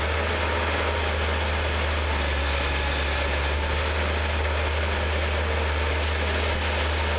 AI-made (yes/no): no